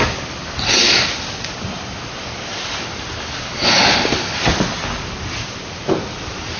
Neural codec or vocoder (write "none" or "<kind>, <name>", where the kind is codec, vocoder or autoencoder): none